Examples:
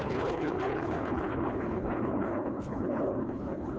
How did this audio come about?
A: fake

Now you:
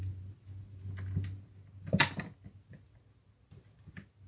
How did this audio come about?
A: real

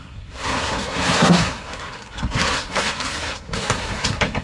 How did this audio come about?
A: fake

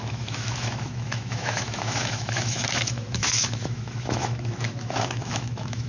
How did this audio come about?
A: fake